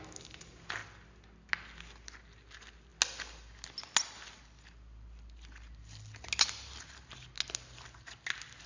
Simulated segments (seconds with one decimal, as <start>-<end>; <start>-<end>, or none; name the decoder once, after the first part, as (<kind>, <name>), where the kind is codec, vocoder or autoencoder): none